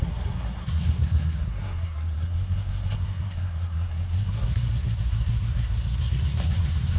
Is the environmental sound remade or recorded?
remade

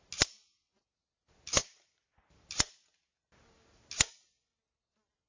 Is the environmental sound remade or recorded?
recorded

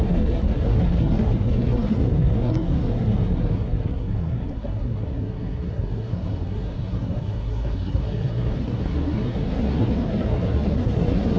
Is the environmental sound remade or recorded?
remade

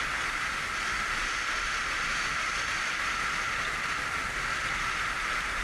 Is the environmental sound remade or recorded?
recorded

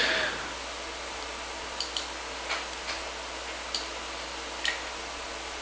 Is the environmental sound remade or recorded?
recorded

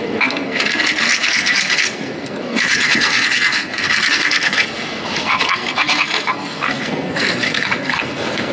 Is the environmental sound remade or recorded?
remade